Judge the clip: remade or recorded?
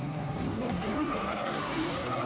remade